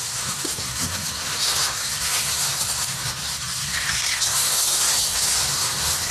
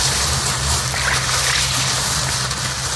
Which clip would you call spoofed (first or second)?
first